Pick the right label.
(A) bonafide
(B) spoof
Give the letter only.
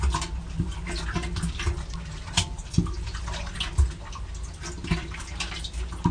A